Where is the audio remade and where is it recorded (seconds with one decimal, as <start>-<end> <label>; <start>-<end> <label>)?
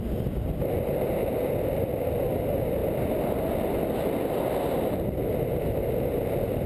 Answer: 0.0-6.7 recorded